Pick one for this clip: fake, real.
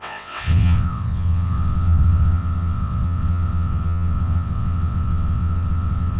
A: fake